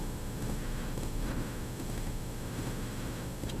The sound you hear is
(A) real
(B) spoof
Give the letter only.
B